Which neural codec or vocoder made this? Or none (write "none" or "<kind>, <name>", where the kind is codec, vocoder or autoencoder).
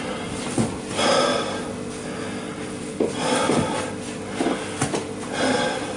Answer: none